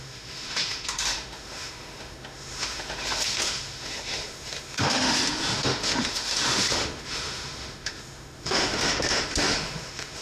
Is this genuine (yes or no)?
no